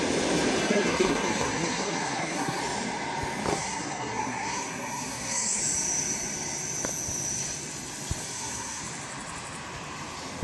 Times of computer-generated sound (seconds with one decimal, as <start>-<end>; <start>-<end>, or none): 0.6-2.6; 3.5-5.6; 8.2-8.8